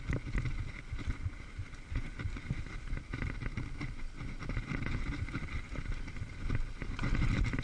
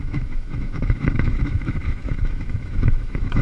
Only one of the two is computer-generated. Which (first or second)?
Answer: second